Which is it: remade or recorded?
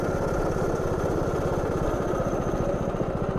recorded